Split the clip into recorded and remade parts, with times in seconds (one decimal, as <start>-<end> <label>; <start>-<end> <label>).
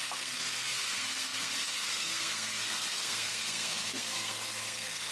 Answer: 0.0-5.1 remade